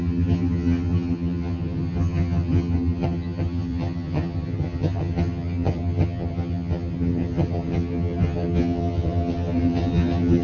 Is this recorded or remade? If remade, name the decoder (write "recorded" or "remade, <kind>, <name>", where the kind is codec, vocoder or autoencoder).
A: remade, vocoder, HiFi-GAN